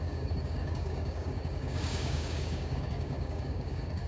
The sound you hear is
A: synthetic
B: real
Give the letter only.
A